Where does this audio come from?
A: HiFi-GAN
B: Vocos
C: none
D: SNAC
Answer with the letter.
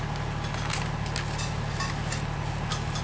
C